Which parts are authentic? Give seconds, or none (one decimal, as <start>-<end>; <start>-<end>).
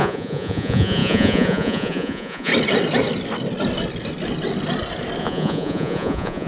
2.5-5.2